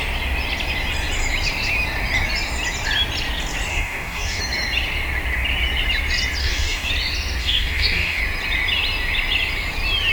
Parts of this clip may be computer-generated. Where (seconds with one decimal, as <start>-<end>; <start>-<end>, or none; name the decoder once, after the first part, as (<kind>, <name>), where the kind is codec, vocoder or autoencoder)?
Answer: 3.7-4.4 (codec, DAC); 6.4-6.9; 7.4-8.2